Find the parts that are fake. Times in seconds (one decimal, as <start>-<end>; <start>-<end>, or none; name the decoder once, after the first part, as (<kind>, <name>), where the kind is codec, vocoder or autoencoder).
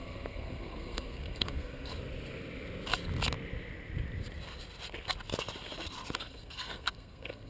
0.0-1.9 (codec, SNAC); 6.2-7.5